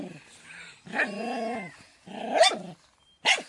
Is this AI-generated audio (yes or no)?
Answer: no